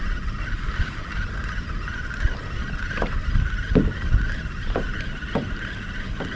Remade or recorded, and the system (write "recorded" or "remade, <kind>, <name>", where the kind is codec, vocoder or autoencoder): recorded